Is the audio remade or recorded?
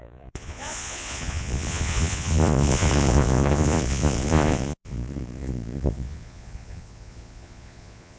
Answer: remade